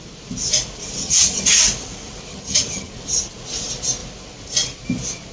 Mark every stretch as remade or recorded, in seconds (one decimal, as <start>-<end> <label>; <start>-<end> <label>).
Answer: 0.0-1.0 recorded; 1.0-1.5 remade; 1.5-2.3 recorded; 2.3-2.9 remade; 2.9-5.3 recorded